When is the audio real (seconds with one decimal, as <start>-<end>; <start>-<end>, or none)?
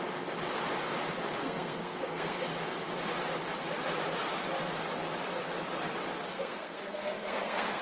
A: 0.0-1.4; 2.4-6.3